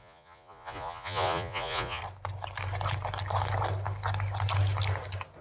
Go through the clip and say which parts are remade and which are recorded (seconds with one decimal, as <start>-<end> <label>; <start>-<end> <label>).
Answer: 0.0-2.0 remade; 2.0-5.4 recorded